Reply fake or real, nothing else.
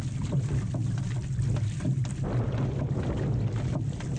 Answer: real